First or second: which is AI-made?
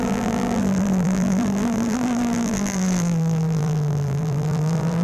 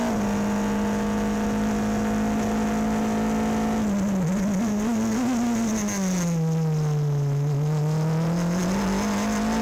first